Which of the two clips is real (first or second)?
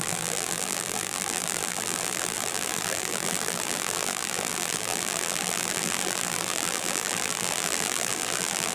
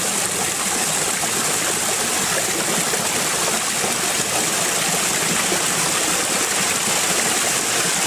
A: second